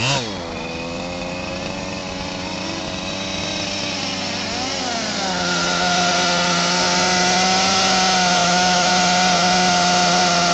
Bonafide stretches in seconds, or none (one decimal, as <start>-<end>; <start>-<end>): 0.0-8.4; 8.9-10.5